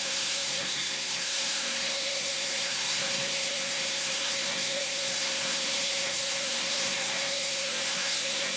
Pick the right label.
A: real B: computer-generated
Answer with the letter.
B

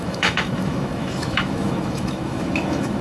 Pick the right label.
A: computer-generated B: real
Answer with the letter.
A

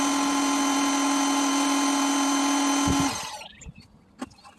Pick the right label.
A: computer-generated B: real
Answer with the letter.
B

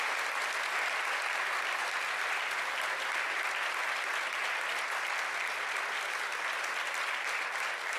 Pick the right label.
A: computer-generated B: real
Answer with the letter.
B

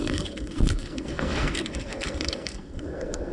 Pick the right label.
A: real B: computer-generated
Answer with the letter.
B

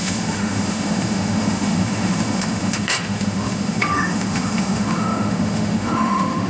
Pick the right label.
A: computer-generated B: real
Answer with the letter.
A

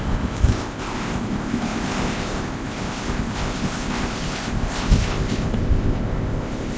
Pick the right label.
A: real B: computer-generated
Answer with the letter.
B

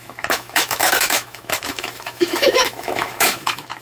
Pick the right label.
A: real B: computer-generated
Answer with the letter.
B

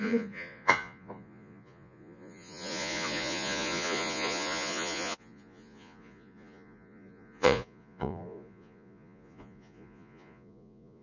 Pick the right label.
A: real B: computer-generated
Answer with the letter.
B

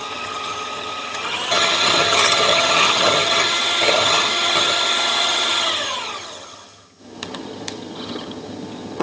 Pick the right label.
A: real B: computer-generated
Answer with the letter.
B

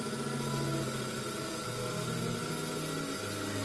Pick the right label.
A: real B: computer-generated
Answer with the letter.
A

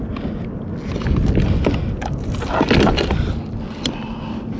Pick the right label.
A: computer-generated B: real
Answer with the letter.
B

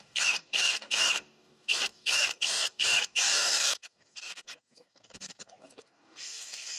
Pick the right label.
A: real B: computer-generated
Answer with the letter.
B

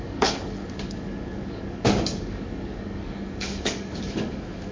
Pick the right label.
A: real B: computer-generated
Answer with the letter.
B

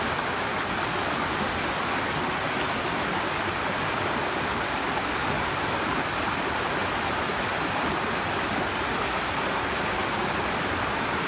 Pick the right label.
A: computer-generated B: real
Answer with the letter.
B